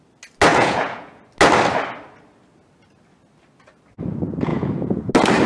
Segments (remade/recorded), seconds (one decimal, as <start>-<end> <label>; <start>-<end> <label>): 0.0-0.5 recorded; 0.5-1.2 remade; 1.2-4.5 recorded; 4.5-5.1 remade; 5.1-5.5 recorded